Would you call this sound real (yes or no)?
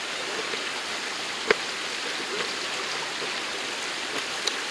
yes